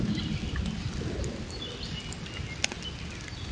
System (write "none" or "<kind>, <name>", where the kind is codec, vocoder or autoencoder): none